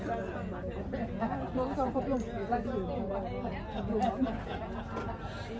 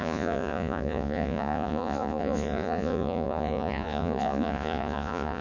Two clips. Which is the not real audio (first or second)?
second